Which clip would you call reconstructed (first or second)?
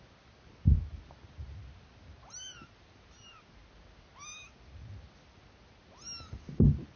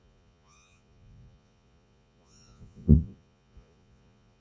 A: second